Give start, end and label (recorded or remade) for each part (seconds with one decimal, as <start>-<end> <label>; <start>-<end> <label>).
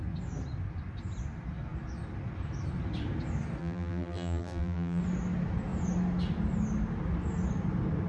0.0-3.6 recorded; 3.6-5.0 remade; 5.0-8.1 recorded